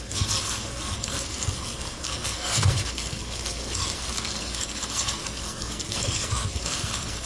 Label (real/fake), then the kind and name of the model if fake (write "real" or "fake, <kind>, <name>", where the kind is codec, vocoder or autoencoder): fake, codec, SNAC